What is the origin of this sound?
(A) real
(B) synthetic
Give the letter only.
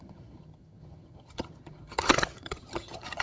B